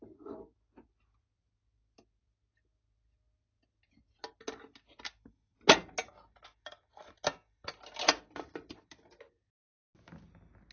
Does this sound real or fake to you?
real